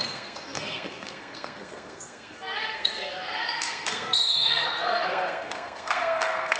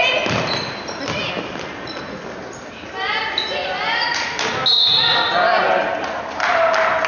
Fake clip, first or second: first